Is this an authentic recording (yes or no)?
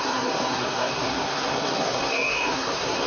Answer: no